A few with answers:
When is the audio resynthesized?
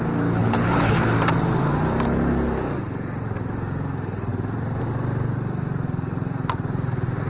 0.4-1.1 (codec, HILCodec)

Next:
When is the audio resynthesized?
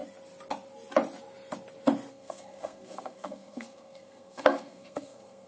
2.1-5.5 (codec, SNAC)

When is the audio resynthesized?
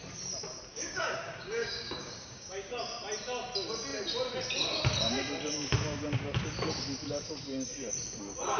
0.7-2.8 (codec, DAC)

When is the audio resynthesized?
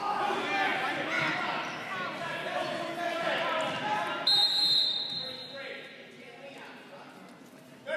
none